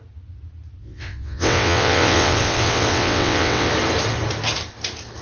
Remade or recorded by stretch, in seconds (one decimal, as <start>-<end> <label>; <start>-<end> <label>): 0.0-0.8 recorded; 0.8-3.7 remade; 3.7-5.2 recorded